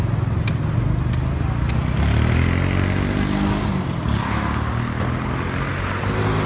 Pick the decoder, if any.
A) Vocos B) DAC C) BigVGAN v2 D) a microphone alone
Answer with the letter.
D